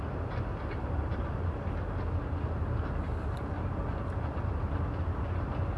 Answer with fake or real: real